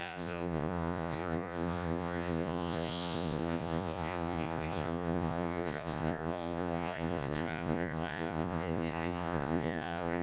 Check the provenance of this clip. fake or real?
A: fake